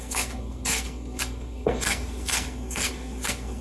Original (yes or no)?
no